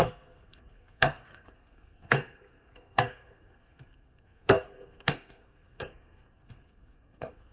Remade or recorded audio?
remade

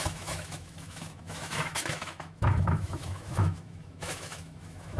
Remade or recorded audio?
remade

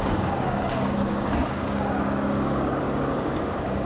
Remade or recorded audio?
remade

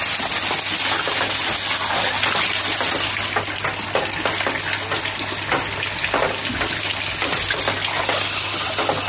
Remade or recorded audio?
recorded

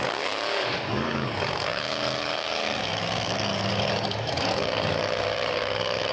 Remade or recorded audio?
remade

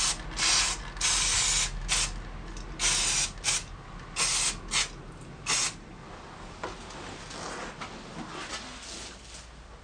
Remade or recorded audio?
recorded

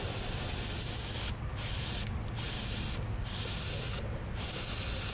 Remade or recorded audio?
recorded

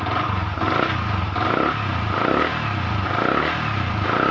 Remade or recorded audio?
recorded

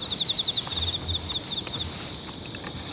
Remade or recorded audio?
recorded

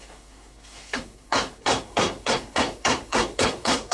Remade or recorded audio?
remade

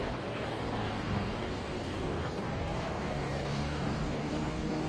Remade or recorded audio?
remade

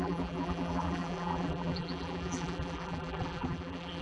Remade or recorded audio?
remade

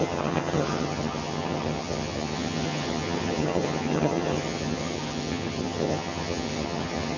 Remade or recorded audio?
remade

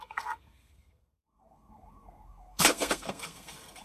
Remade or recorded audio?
remade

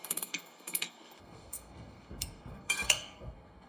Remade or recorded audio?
remade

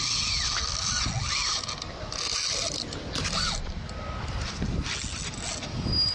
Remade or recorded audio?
recorded